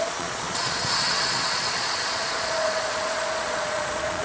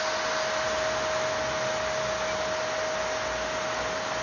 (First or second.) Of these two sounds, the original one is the second